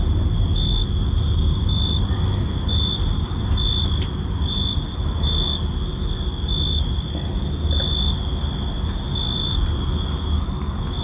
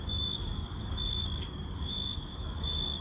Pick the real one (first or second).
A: first